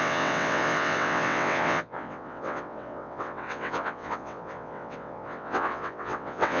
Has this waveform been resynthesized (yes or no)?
yes